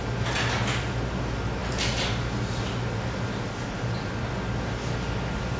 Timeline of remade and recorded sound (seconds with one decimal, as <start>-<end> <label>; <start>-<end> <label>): 0.0-5.6 recorded